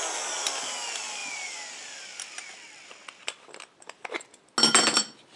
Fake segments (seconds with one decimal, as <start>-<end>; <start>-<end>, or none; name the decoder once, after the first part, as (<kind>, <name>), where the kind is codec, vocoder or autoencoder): 1.2-4.4 (vocoder, BigVGAN v2)